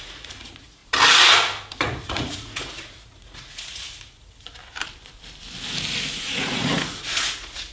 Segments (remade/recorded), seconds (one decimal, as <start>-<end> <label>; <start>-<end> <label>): 0.0-0.8 remade; 0.8-1.8 recorded; 1.8-4.6 remade; 4.6-6.2 recorded; 6.2-7.7 remade

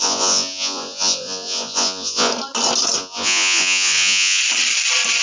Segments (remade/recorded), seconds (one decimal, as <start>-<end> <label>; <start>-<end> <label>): 0.0-2.3 remade; 2.3-3.0 recorded; 3.0-4.4 remade; 4.4-5.2 recorded

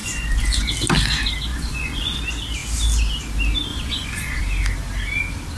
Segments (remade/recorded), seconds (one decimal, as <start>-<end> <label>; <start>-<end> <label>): 0.0-0.7 remade; 0.7-1.5 recorded; 1.5-2.2 remade; 2.2-3.7 recorded; 3.7-4.4 remade; 4.4-5.6 recorded

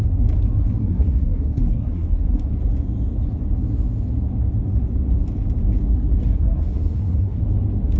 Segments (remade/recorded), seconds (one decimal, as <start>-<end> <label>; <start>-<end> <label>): 0.0-0.8 recorded; 0.8-2.5 remade; 2.5-6.3 recorded; 6.3-7.4 remade; 7.4-8.0 recorded

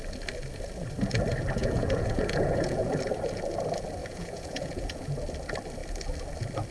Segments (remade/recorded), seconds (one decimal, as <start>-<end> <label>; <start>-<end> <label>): 0.0-1.6 recorded; 1.6-2.9 remade; 2.9-4.0 recorded; 4.0-5.0 remade; 5.0-6.7 recorded

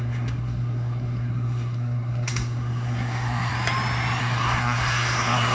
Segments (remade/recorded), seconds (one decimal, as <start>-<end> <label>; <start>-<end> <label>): 0.0-3.5 remade; 3.5-4.2 recorded; 4.2-5.5 remade

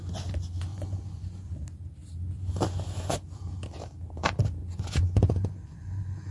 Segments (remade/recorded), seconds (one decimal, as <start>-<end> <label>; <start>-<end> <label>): 0.0-0.7 recorded; 0.7-1.5 remade; 1.5-4.6 recorded; 4.6-6.3 remade

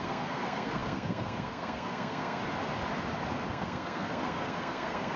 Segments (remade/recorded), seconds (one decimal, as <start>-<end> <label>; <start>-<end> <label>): 0.0-2.4 remade; 2.4-3.5 recorded; 3.5-5.2 remade